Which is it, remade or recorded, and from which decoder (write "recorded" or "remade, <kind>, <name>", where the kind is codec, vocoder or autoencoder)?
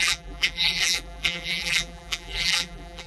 remade, vocoder, BigVGAN v2